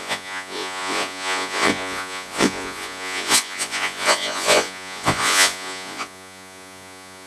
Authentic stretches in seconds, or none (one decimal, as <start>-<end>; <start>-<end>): none